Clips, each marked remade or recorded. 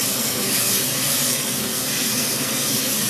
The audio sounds remade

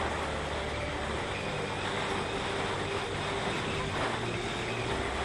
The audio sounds recorded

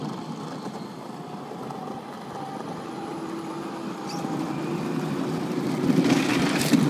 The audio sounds recorded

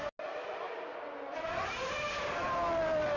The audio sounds recorded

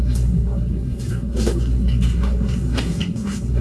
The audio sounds remade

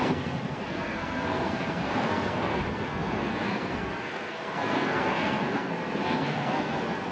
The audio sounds remade